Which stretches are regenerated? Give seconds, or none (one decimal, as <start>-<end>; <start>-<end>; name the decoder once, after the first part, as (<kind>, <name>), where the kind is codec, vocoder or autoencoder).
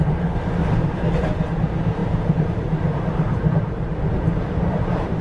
0.6-1.4 (vocoder, BigVGAN v2); 2.0-5.2